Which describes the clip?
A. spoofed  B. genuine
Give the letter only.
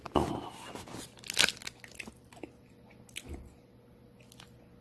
B